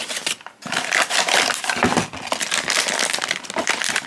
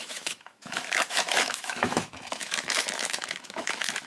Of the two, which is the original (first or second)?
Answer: first